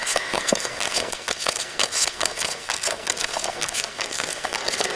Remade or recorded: remade